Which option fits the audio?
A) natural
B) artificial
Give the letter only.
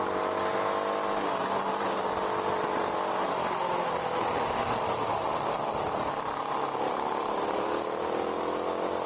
A